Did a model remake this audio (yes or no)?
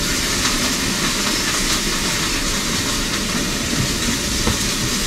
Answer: no